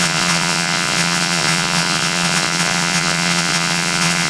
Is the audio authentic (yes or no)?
no